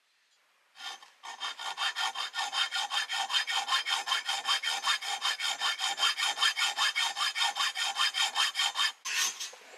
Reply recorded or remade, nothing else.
recorded